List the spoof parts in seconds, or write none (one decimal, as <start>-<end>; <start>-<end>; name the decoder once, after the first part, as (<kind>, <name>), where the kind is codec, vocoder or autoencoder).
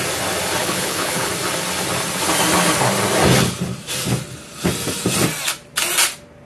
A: 0.6-1.3 (codec, HILCodec)